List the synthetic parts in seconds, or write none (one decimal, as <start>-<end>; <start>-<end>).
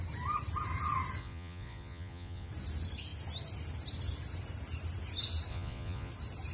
1.2-2.5; 5.5-6.1